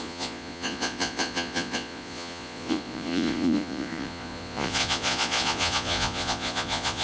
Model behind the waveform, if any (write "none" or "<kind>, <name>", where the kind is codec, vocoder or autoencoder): vocoder, Vocos